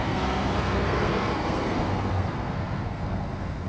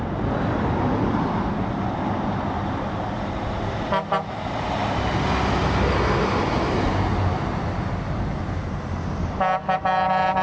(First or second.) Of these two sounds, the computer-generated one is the first